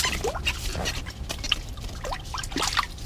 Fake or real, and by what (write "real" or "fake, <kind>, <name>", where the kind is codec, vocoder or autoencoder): real